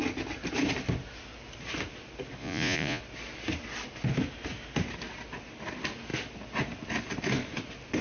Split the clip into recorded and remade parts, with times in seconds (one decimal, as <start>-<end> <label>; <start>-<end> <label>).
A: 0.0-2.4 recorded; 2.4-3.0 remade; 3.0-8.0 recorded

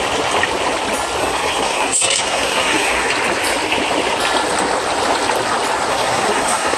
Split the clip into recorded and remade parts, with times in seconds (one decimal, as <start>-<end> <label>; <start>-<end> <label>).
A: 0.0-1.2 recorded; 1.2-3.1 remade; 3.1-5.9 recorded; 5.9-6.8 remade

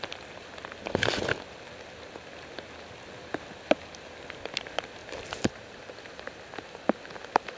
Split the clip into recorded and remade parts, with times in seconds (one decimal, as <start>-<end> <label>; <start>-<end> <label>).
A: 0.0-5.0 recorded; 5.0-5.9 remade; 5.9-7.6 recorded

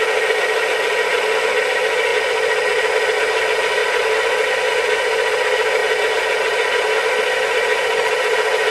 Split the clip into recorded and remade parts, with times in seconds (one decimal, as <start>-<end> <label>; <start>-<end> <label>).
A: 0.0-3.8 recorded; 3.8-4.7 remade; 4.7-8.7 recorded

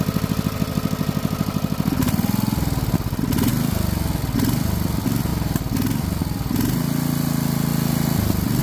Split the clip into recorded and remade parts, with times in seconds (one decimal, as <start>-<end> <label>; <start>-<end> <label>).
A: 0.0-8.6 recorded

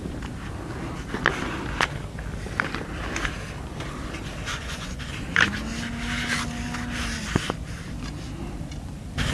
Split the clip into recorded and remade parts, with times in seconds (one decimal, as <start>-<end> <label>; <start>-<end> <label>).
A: 0.0-4.5 recorded; 4.5-5.1 remade; 5.1-9.3 recorded

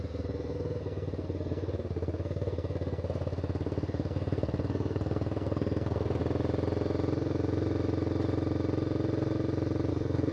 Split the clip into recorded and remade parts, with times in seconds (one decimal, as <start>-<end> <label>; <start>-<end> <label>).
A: 0.0-6.2 remade; 6.2-9.9 recorded; 9.9-10.3 remade